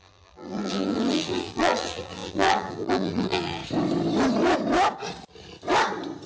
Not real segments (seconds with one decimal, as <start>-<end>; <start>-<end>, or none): 0.0-3.6